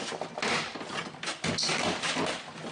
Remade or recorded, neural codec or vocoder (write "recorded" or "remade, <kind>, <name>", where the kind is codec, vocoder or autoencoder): recorded